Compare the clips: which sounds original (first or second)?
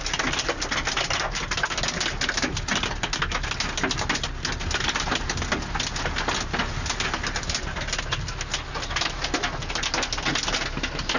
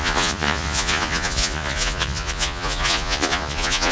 first